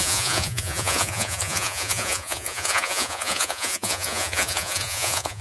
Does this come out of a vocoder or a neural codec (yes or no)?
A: yes